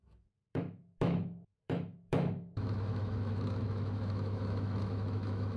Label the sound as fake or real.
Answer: fake